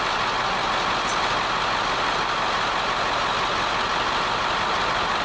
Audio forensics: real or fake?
real